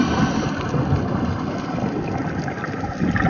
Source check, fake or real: real